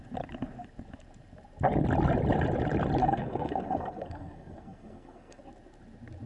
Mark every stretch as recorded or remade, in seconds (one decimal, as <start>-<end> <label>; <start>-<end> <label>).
0.0-3.0 recorded; 3.0-5.4 remade; 5.4-6.3 recorded